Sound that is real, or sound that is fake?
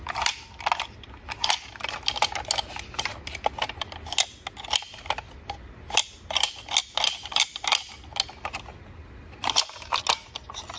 real